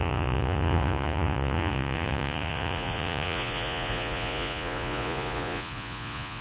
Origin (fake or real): fake